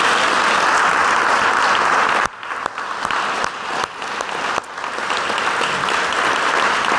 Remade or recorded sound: recorded